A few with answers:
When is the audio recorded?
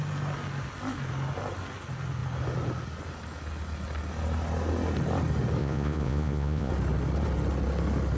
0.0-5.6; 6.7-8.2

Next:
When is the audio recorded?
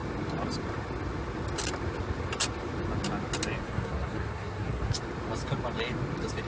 0.0-3.6; 4.9-6.5